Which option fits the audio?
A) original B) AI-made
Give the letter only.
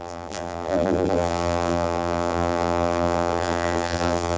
B